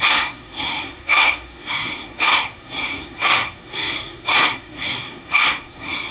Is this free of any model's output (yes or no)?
no